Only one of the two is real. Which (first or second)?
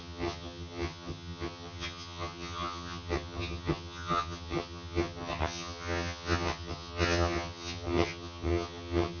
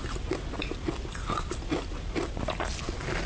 second